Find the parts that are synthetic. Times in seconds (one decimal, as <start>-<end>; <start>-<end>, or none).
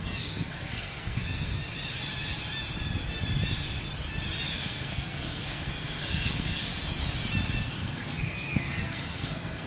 0.0-1.6; 4.5-6.7; 7.6-9.7